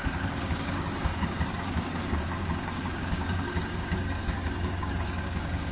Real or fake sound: fake